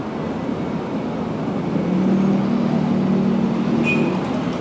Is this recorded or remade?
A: recorded